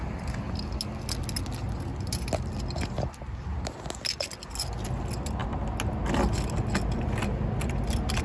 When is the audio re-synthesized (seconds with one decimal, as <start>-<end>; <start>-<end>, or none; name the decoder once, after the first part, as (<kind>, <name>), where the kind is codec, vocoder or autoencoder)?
none